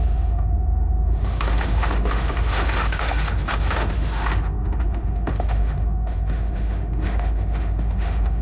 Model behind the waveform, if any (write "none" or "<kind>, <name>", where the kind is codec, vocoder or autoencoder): autoencoder, DAC-VAE